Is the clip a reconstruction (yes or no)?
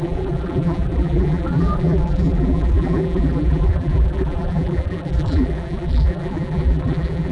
yes